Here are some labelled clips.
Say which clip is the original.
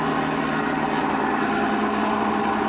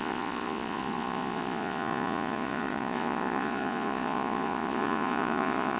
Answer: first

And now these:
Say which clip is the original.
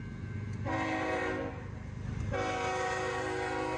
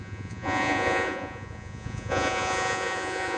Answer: first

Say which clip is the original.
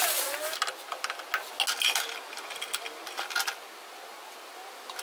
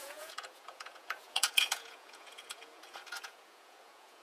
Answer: first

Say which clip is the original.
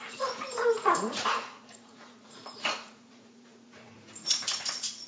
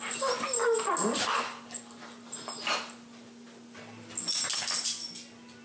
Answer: second